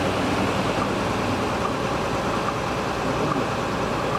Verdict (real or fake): real